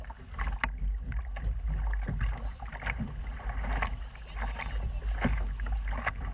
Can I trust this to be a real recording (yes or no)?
yes